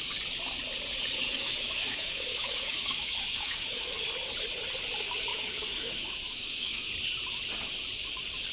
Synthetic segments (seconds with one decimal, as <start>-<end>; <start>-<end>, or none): 1.3-4.0; 5.3-6.9